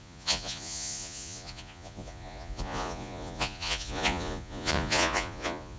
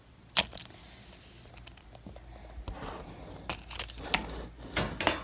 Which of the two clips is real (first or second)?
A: second